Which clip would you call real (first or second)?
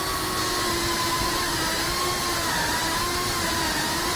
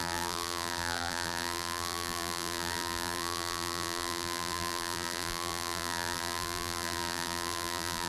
first